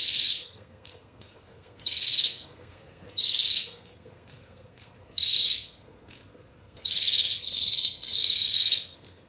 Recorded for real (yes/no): no